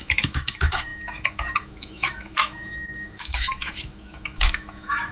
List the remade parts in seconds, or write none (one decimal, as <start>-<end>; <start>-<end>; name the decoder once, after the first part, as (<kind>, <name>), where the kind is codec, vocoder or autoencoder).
0.0-5.1 (autoencoder, DAC-VAE)